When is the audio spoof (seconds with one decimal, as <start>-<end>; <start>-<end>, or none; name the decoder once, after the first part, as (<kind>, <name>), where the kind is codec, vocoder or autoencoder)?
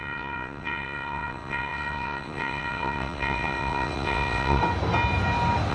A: 0.0-4.6 (vocoder, WaveNeXt)